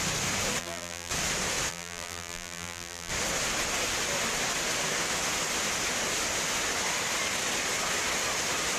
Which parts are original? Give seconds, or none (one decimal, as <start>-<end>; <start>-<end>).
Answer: 0.0-0.6; 1.1-1.7; 3.1-8.8